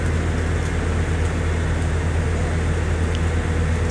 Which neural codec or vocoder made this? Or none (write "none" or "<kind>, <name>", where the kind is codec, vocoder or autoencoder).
none